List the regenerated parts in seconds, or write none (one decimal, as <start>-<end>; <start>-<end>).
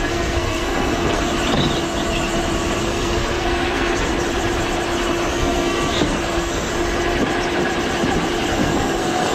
0.0-1.3; 2.8-4.1; 5.3-6.7; 8.5-9.3